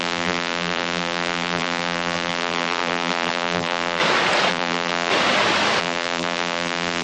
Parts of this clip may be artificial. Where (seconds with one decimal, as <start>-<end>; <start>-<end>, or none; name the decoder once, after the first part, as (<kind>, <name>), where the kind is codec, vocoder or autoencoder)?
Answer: 0.0-4.0 (vocoder, BigVGAN v2); 4.5-5.1; 5.8-7.0